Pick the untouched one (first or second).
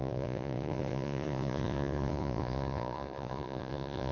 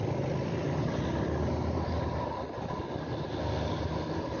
second